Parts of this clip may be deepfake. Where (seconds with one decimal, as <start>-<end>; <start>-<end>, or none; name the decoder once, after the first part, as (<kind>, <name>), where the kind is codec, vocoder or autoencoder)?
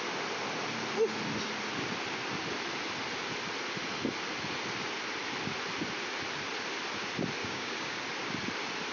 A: 7.4-8.0 (codec, DAC)